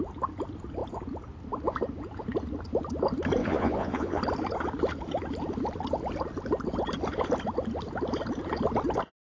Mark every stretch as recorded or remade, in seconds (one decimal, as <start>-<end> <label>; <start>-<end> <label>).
0.0-3.4 recorded; 3.4-4.2 remade; 4.2-9.3 recorded